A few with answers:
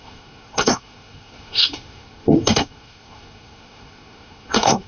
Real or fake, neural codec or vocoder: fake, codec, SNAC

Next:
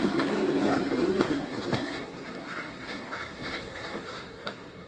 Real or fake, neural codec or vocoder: fake, codec, SNAC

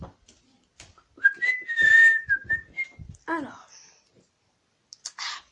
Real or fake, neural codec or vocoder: real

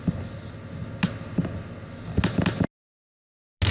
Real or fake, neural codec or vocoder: real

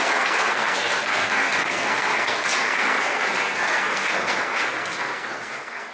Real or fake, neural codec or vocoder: fake, codec, SNAC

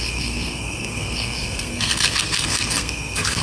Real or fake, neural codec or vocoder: fake, codec, SNAC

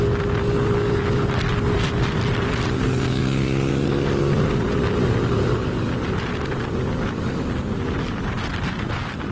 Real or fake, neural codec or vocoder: real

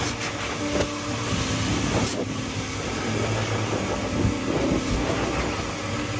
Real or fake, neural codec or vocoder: real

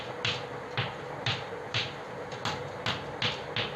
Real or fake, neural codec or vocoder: real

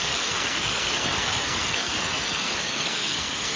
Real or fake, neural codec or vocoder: fake, codec, SNAC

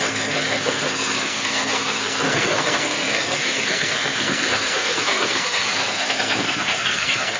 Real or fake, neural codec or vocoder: fake, codec, SNAC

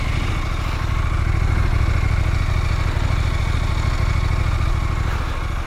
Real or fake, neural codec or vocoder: real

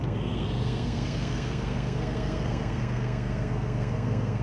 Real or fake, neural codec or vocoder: fake, codec, SNAC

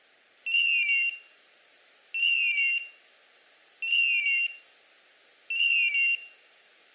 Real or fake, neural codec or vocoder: real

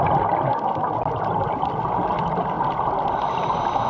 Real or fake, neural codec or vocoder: real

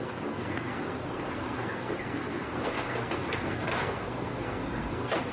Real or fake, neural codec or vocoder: fake, codec, SNAC